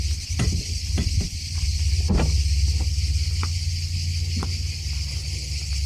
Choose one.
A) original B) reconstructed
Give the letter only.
A